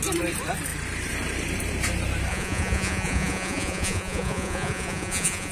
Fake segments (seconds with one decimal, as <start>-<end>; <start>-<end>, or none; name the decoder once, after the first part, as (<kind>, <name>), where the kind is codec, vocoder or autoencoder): 2.3-5.5 (vocoder, Vocos)